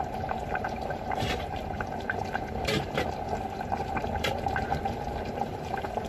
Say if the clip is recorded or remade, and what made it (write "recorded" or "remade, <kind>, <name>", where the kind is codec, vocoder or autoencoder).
remade, vocoder, BigVGAN v2